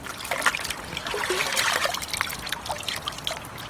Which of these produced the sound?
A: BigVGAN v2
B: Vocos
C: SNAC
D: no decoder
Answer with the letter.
D